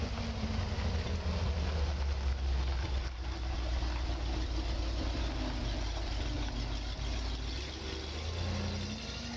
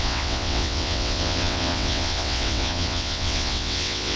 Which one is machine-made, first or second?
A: second